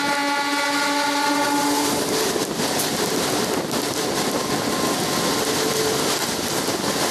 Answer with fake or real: real